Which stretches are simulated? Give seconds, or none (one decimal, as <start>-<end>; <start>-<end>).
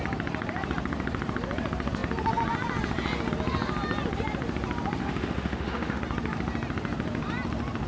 5.0-6.0